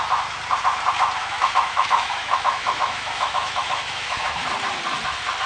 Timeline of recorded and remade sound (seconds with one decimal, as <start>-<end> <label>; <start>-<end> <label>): 0.0-1.2 recorded; 1.2-4.5 remade; 4.5-5.5 recorded